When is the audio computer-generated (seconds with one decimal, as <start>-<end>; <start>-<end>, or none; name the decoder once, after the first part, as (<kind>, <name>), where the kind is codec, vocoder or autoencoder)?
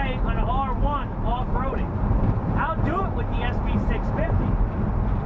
1.3-4.5 (vocoder, BigVGAN v2)